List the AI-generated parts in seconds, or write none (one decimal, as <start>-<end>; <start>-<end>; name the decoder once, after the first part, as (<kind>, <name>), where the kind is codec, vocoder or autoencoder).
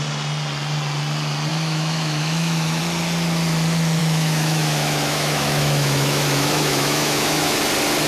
1.5-2.8 (autoencoder, DAC-VAE); 4.0-7.6